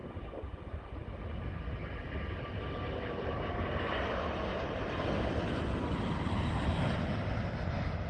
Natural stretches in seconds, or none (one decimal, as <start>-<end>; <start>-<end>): 0.0-8.1